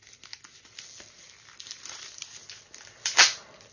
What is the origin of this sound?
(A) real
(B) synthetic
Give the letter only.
A